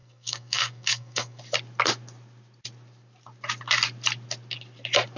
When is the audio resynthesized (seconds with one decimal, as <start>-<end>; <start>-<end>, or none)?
0.0-1.4